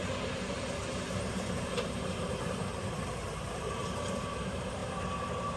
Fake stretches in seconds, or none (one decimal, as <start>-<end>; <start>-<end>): 1.1-5.6